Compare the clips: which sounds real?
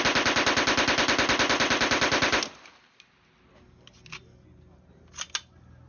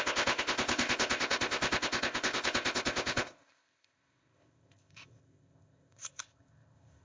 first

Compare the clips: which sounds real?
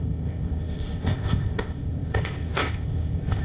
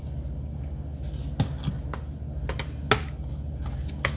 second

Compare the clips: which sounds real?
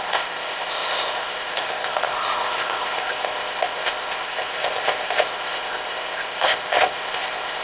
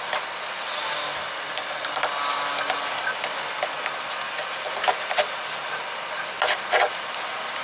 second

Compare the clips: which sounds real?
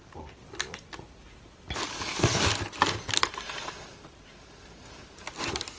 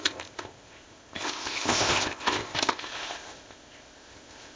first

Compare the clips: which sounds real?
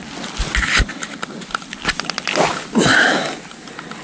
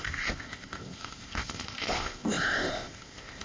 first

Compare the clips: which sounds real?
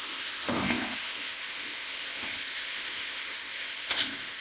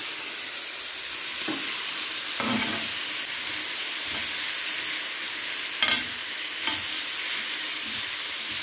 second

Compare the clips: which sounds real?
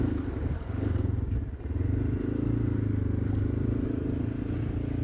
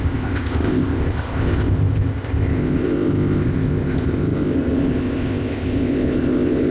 first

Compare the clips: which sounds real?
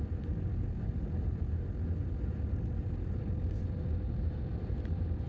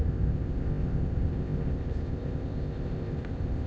first